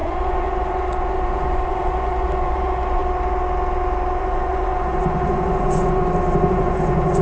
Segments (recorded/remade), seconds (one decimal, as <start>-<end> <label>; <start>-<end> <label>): 0.0-3.0 remade; 3.0-4.2 recorded; 4.2-6.0 remade; 6.0-6.5 recorded; 6.5-7.2 remade